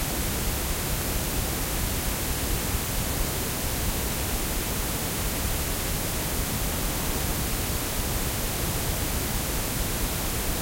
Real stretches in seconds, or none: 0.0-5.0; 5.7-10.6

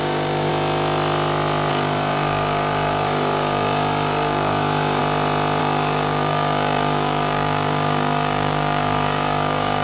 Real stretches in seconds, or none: 0.5-1.7; 5.0-5.6